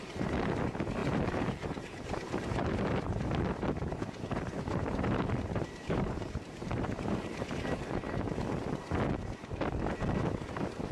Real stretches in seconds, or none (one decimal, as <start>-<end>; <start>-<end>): 0.0-1.0; 3.2-3.9; 7.5-10.9